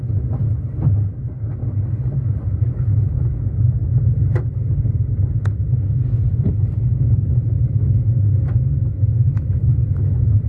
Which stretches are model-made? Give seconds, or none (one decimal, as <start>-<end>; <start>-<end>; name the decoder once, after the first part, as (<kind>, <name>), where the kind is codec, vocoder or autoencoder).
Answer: none